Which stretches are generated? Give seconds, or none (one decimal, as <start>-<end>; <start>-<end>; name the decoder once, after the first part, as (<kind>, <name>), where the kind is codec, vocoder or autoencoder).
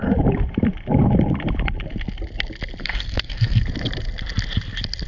2.8-3.6 (codec, SNAC)